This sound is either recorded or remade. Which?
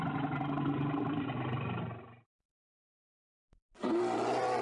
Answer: recorded